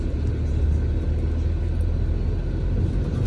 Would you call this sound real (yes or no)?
yes